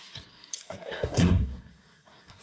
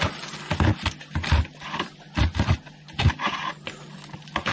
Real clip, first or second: second